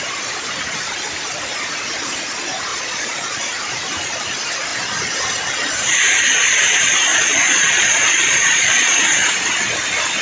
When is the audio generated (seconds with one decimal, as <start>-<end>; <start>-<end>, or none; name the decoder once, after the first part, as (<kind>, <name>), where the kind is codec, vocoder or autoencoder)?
2.7-3.4 (vocoder, Vocos); 7.1-9.3